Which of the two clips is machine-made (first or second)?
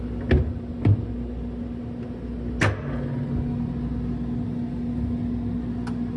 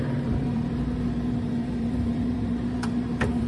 second